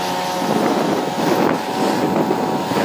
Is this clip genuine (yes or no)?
yes